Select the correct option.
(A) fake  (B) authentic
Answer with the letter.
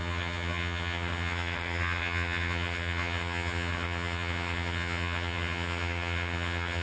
A